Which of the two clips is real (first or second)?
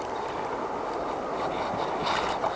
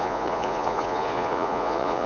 first